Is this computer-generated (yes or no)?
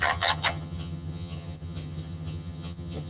yes